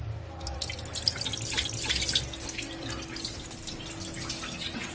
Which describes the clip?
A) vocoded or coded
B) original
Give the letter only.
B